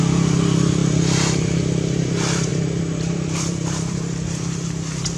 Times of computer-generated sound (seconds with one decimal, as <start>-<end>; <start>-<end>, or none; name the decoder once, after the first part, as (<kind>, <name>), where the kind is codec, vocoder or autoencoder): 0.8-1.5 (vocoder, BigVGAN v2); 2.5-5.2